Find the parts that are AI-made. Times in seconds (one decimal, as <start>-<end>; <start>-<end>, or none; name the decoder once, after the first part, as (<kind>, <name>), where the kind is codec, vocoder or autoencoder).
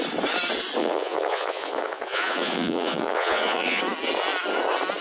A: 0.8-3.8 (vocoder, Vocos)